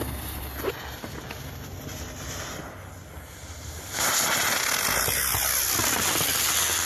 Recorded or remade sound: recorded